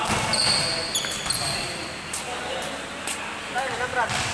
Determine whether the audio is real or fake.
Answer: real